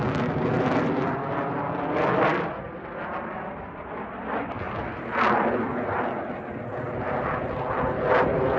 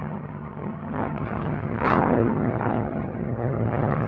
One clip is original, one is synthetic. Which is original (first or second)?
first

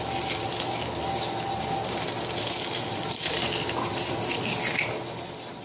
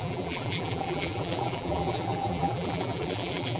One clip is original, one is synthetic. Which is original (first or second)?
first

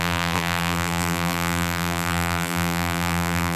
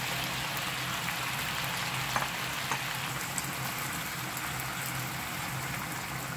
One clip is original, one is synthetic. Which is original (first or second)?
second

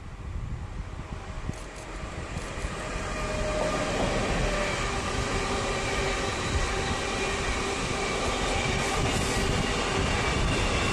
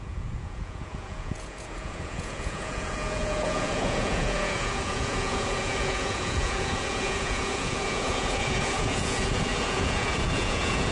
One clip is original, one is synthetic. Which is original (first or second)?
first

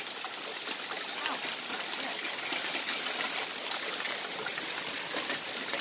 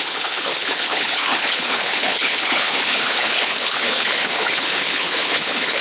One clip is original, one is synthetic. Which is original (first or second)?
first